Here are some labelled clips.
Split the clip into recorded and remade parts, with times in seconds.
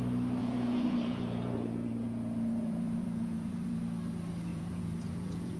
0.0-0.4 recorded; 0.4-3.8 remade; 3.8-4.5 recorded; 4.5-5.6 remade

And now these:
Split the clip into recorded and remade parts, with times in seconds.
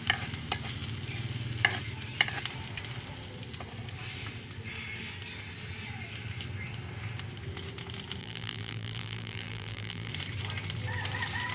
0.0-8.2 recorded; 8.2-10.1 remade; 10.1-11.5 recorded